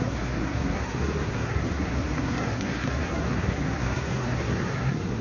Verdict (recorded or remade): remade